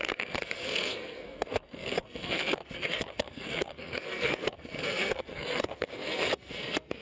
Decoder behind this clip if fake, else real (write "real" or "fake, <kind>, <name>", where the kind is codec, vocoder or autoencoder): fake, codec, SNAC